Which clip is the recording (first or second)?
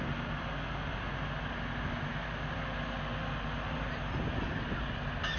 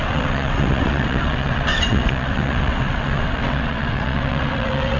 first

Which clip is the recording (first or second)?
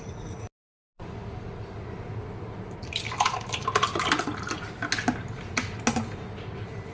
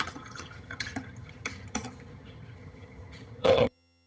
first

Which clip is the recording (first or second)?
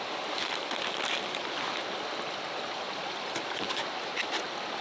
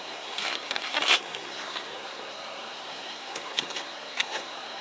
first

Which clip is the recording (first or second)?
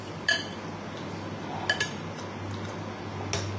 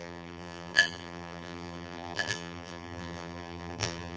first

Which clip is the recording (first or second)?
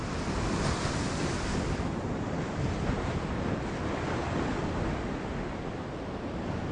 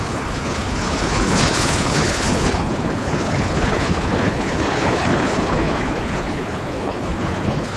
first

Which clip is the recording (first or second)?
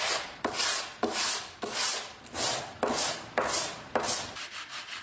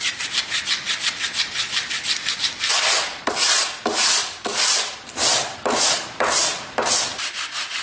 first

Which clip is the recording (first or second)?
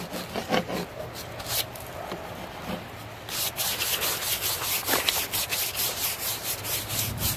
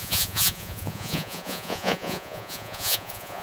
first